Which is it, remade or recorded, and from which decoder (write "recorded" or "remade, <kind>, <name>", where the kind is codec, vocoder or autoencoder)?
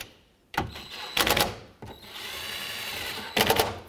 remade, vocoder, BigVGAN v2